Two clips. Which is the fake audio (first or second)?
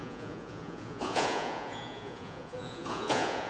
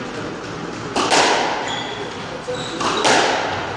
first